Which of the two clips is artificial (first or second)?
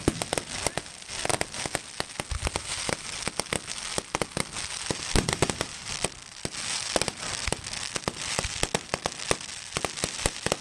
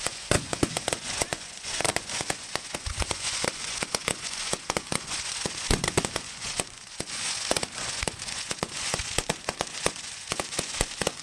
second